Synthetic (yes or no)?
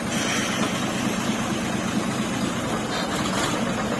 no